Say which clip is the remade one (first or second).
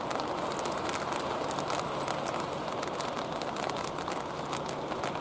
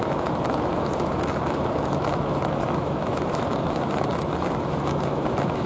second